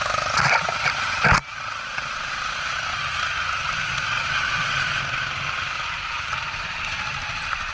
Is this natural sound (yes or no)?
yes